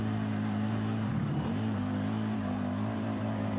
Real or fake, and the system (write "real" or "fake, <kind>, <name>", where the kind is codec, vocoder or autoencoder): fake, vocoder, BigVGAN v2